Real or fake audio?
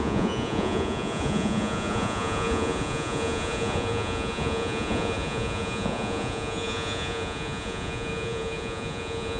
fake